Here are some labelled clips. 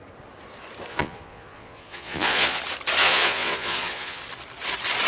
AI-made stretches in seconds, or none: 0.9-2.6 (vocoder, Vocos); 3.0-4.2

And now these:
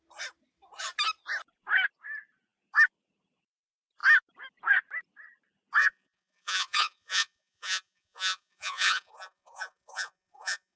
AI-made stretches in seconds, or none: 5.8-10.8 (vocoder, Vocos)

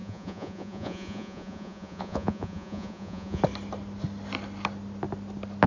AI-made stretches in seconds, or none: 0.0-3.4 (vocoder, Vocos)

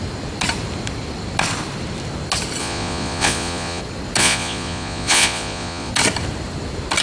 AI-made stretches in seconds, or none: 2.6-3.8 (vocoder, Vocos); 4.2-5.9

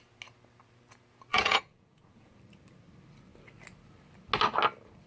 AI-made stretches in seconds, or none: 1.3-2.4 (vocoder, Vocos)

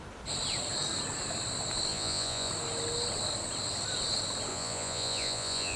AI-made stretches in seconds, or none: 1.9-2.5 (vocoder, Vocos); 4.5-5.8

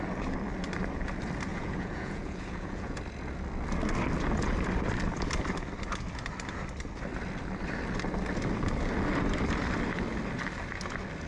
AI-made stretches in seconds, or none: 1.5-3.0 (vocoder, Vocos)

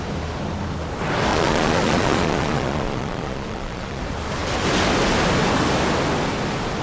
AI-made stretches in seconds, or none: 1.3-4.0 (vocoder, Vocos)